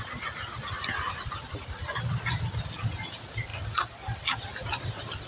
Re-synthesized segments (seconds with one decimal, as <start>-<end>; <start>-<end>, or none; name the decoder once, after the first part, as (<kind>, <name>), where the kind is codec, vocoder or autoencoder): none

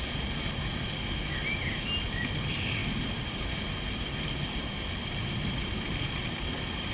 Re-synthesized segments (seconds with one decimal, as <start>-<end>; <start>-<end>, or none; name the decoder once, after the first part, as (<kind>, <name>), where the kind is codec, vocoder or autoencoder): 2.8-6.9 (vocoder, BigVGAN v2)

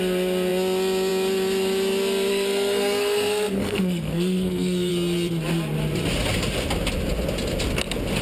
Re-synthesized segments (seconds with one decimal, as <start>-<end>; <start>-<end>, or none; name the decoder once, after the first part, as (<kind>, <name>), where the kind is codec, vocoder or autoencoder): 2.3-4.9 (codec, SNAC)

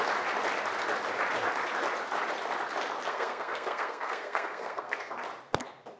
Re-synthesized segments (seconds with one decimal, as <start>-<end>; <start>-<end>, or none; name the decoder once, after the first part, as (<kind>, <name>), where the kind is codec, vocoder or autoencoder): 3.1-5.1 (codec, SNAC)

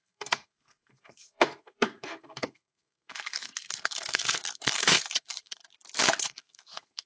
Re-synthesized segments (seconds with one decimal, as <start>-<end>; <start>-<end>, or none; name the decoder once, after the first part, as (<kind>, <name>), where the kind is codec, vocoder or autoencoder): 0.0-5.6 (codec, SNAC); 6.2-7.1